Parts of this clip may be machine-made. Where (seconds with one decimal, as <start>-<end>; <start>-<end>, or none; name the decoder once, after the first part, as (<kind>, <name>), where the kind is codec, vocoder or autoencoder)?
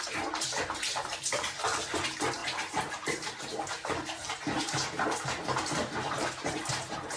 0.0-7.2 (vocoder, BigVGAN v2)